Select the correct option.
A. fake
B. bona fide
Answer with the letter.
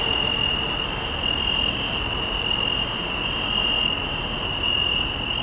B